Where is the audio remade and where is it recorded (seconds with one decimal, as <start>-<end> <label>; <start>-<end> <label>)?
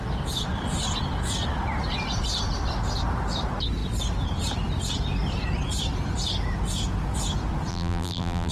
0.0-7.7 recorded; 7.7-8.5 remade